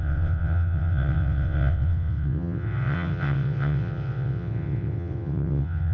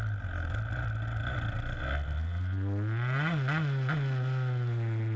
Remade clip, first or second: first